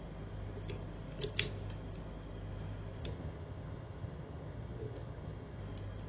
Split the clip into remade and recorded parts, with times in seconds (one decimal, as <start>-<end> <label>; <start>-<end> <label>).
0.0-3.0 recorded; 3.0-5.6 remade; 5.6-6.1 recorded